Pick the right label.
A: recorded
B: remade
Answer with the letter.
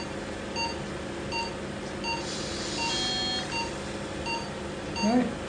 A